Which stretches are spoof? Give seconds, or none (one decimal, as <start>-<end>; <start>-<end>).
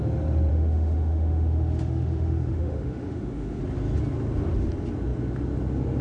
0.5-3.6